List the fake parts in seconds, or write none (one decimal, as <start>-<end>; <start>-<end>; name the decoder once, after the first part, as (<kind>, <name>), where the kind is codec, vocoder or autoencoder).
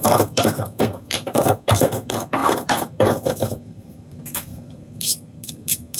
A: 0.0-6.0 (codec, SNAC)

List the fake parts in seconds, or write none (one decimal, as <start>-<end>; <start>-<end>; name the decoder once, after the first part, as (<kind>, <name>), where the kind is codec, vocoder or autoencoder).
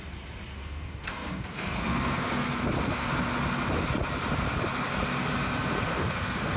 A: 0.6-2.7 (codec, SNAC); 5.9-6.6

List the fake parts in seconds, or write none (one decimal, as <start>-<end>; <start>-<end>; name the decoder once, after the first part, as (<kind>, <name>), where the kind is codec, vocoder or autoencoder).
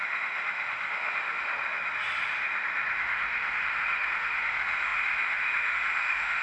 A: 0.0-1.5 (autoencoder, DAC-VAE); 3.0-6.4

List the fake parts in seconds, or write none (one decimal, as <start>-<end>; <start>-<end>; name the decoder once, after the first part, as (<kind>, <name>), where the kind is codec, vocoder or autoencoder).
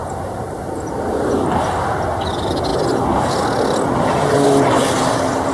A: 0.0-0.7 (vocoder, BigVGAN v2)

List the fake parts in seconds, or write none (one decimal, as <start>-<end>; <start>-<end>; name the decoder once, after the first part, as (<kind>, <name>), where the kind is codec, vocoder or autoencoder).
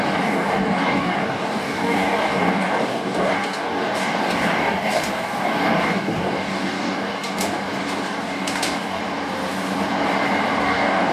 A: 0.0-9.0 (codec, DAC); 10.6-11.1